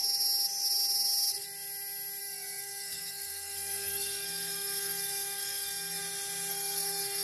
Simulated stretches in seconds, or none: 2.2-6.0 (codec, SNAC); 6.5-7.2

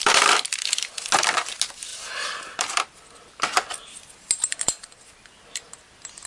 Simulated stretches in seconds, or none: none

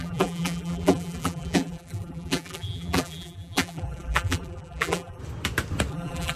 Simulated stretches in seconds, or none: 0.0-5.2 (vocoder, BigVGAN v2); 5.9-6.4